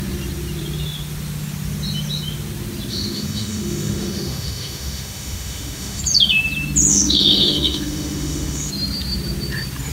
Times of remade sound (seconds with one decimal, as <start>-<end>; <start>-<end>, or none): 2.9-6.0; 6.9-8.7